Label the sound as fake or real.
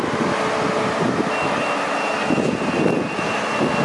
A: real